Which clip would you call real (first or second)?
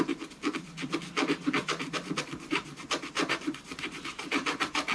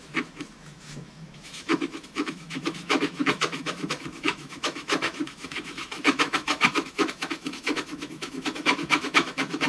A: first